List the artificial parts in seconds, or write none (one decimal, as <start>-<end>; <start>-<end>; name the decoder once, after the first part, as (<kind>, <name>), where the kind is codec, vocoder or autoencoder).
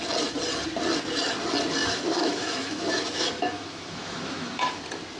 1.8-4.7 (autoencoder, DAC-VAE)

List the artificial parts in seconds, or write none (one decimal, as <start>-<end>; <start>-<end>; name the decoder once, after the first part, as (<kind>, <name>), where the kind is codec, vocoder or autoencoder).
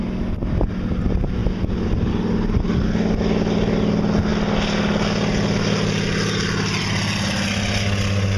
none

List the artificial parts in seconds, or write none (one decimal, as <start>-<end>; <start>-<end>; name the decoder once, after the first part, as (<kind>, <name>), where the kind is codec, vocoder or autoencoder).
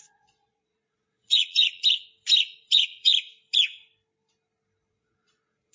0.0-1.8 (vocoder, Vocos); 2.5-3.1; 4.9-5.7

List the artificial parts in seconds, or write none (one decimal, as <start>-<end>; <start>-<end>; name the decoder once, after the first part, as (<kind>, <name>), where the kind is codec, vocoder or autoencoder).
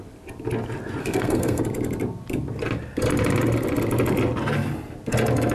1.0-1.6 (codec, SNAC)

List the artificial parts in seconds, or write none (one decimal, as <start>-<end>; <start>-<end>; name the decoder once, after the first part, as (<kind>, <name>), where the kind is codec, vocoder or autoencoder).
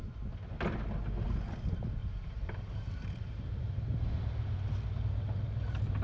2.0-4.5 (vocoder, BigVGAN v2)